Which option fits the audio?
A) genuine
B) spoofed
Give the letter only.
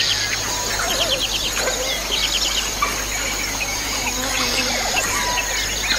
A